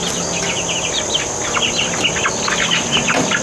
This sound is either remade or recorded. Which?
recorded